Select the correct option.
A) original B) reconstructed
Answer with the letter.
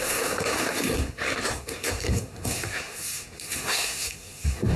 B